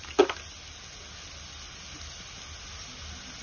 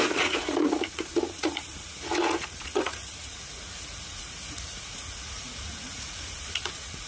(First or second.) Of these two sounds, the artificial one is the second